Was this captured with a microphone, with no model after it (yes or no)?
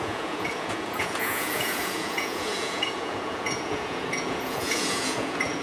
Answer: no